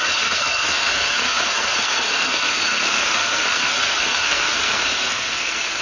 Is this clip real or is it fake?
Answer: fake